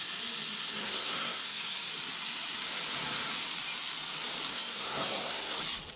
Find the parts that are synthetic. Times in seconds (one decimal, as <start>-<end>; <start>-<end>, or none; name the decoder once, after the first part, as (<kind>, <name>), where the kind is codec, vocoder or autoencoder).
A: 0.8-1.9 (codec, SNAC); 4.5-5.6